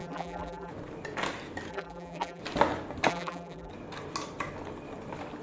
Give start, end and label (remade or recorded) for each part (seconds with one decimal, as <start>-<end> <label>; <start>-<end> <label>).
0.0-0.7 remade; 0.7-1.7 recorded; 1.7-2.4 remade; 2.4-3.1 recorded; 3.1-3.7 remade; 3.7-5.4 recorded